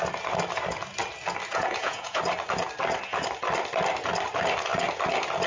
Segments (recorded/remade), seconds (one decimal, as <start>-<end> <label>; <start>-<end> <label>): 0.0-1.5 recorded; 1.5-2.2 remade; 2.2-5.5 recorded